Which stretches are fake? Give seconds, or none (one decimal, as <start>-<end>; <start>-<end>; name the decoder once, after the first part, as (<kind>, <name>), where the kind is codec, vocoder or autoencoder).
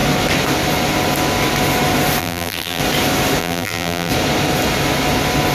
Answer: 2.2-2.8 (vocoder, BigVGAN v2); 3.4-4.1